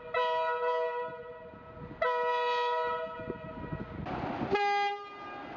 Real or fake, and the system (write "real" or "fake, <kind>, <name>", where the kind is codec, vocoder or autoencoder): real